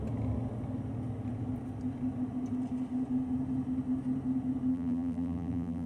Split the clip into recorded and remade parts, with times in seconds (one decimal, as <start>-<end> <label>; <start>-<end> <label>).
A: 0.0-4.7 recorded; 4.7-5.9 remade